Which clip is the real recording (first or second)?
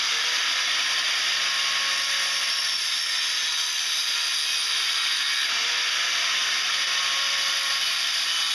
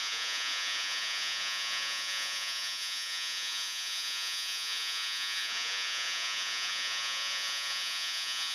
first